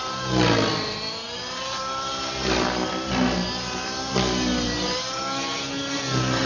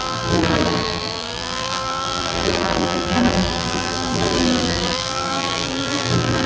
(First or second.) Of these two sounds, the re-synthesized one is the second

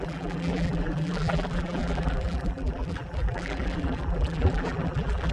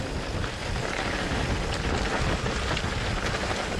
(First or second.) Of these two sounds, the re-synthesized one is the first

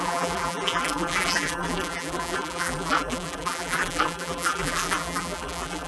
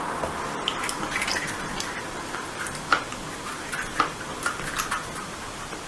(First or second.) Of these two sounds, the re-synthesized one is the first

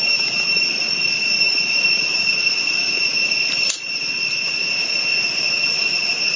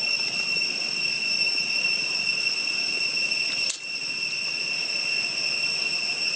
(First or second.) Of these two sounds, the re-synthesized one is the first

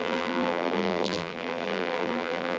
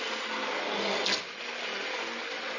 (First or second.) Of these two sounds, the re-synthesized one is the first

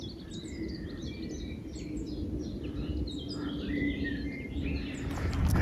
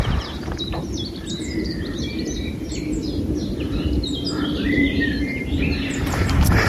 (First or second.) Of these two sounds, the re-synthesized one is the second